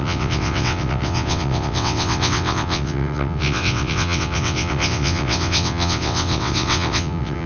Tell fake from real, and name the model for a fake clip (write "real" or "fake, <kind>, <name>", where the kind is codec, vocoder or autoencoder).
fake, vocoder, WaveNeXt